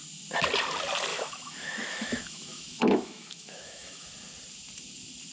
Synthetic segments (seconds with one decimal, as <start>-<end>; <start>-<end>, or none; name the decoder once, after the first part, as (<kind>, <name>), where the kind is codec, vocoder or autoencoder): 1.1-4.1 (autoencoder, DAC-VAE)